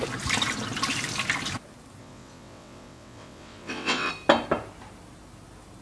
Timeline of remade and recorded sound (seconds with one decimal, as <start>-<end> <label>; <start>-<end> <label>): 0.0-2.0 recorded; 2.0-4.1 remade; 4.1-5.8 recorded